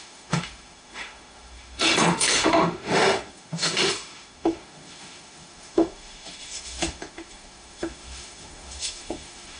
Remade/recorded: remade